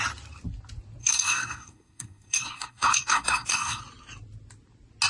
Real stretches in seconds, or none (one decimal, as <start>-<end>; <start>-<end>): 0.0-1.0; 3.8-5.1